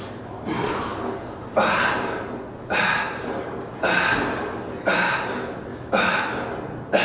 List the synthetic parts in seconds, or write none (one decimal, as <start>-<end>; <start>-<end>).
5.7-6.2